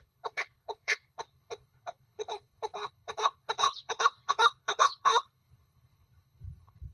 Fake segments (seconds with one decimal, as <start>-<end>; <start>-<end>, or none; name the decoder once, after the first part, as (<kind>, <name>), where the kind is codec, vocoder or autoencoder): 0.0-6.9 (codec, HILCodec)